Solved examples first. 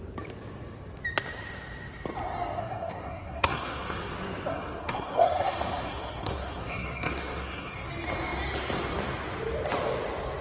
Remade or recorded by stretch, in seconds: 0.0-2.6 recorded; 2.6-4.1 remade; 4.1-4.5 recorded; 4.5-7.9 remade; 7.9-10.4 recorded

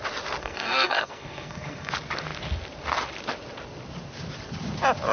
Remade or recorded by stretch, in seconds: 0.0-0.4 recorded; 0.4-1.9 remade; 1.9-5.1 recorded

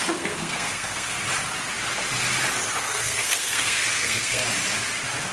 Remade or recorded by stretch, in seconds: 0.0-1.2 remade; 1.2-2.8 recorded; 2.8-4.4 remade; 4.4-5.3 recorded

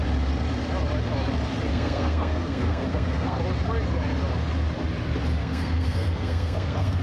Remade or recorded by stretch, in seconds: 0.0-1.7 recorded; 1.7-3.4 remade; 3.4-5.4 recorded; 5.4-7.0 remade

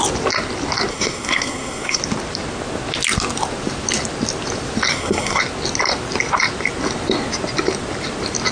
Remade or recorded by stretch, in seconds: 0.0-0.9 recorded; 0.9-2.0 remade; 2.0-4.9 recorded; 4.9-5.4 remade; 5.4-8.5 recorded